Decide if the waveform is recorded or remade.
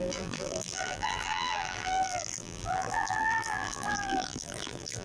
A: remade